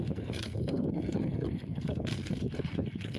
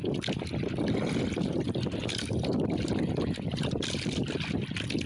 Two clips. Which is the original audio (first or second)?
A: second